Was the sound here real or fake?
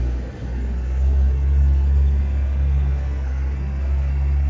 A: fake